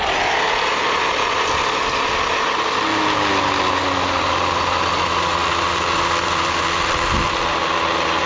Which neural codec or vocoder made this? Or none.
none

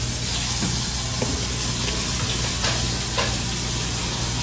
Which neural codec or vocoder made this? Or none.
none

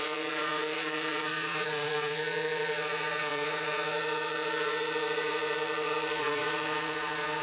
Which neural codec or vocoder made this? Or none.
vocoder, Vocos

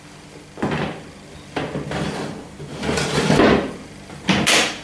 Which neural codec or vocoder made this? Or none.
none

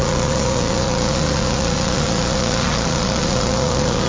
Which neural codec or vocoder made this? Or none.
vocoder, Vocos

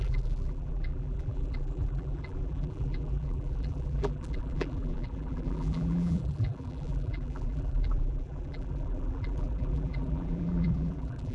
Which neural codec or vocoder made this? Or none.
vocoder, BigVGAN v2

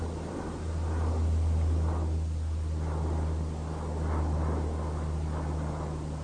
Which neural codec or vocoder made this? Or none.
none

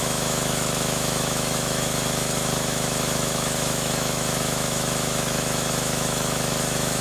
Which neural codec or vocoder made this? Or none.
autoencoder, DAC-VAE